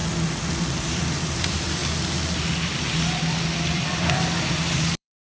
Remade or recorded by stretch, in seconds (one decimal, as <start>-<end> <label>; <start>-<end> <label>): 0.0-0.6 recorded; 0.6-1.8 remade; 1.8-3.6 recorded; 3.6-5.2 remade